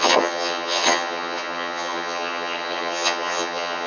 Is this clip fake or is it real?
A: fake